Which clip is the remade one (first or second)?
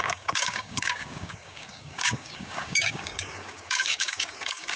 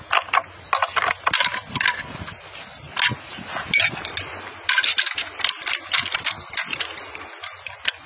first